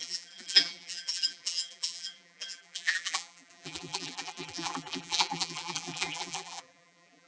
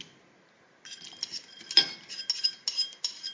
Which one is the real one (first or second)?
second